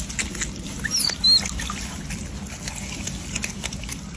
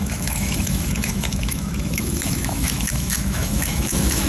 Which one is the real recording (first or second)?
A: first